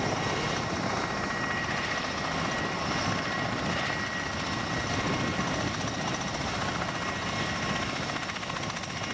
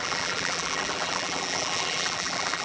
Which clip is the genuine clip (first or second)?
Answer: first